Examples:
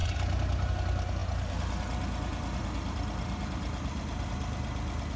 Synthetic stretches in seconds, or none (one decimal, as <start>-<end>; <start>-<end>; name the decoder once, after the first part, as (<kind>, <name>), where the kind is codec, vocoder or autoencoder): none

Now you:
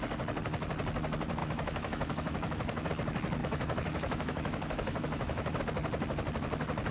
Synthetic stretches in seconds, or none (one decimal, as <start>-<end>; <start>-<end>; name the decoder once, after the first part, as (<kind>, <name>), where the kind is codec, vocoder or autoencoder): 1.4-2.9 (autoencoder, DAC-VAE); 3.4-5.6

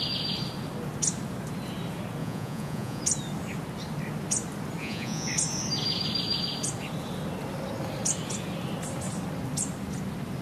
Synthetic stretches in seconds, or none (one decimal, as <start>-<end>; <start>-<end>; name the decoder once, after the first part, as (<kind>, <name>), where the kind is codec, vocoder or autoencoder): 2.2-3.0 (vocoder, Vocos); 4.8-5.3

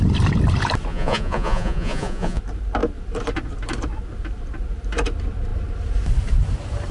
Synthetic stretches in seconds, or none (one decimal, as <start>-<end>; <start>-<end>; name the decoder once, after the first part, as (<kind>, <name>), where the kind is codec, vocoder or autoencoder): 0.9-2.4 (vocoder, Vocos)

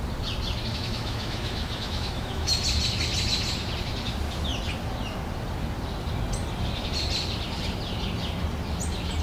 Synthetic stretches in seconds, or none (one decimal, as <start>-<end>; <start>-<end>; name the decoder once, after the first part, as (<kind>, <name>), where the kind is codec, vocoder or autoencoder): 0.7-2.5 (autoencoder, DAC-VAE)

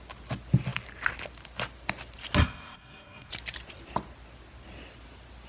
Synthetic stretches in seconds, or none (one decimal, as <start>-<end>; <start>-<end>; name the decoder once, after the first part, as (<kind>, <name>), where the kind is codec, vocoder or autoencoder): 2.4-3.3 (codec, SNAC)

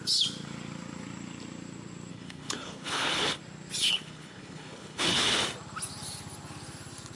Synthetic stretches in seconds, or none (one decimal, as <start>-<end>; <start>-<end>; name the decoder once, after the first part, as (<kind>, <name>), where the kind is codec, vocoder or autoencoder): 2.1-3.4 (codec, HILCodec); 3.8-5.4